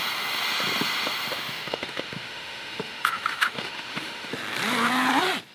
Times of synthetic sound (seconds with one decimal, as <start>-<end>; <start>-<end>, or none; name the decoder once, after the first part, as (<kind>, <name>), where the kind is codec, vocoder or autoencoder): 1.3-4.3 (autoencoder, DAC-VAE)